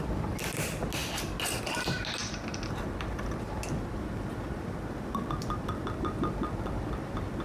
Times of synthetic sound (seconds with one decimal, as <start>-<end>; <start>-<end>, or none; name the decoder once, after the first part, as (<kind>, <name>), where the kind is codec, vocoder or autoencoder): none